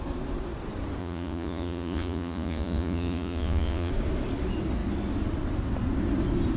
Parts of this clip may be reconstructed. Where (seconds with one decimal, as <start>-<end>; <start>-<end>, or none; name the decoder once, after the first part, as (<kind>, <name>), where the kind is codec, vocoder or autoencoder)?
1.0-3.9 (vocoder, Vocos)